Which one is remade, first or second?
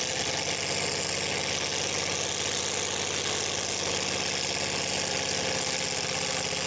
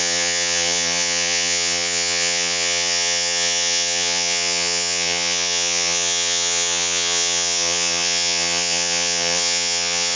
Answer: second